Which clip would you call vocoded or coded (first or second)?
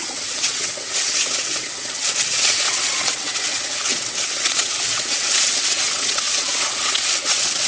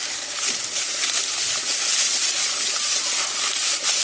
first